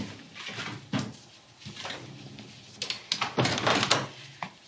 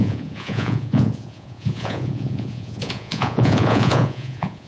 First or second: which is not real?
second